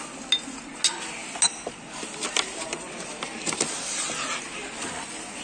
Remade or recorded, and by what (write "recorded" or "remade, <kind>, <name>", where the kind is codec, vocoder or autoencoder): recorded